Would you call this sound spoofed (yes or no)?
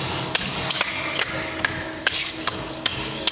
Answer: yes